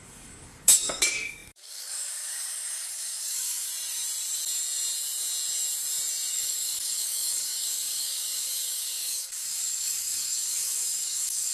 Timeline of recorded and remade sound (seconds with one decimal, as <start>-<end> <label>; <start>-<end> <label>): 0.0-3.7 remade; 3.7-6.3 recorded; 6.3-11.5 remade